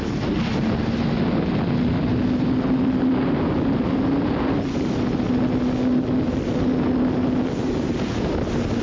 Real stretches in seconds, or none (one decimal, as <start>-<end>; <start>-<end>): 0.0-8.8